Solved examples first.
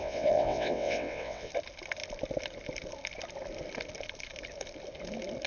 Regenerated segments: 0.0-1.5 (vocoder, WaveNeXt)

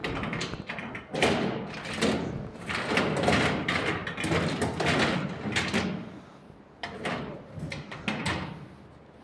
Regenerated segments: none

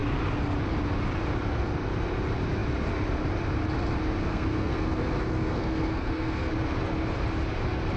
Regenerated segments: 4.2-6.5 (codec, SNAC)

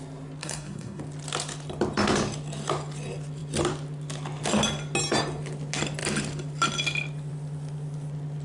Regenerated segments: 0.4-1.0 (codec, SNAC)

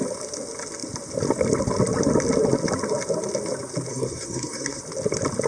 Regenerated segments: 3.9-4.8 (codec, SNAC)